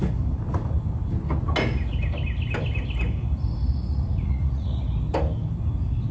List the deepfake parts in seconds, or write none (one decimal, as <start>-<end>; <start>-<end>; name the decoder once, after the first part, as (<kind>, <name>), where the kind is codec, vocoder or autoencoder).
3.9-4.8 (vocoder, Vocos)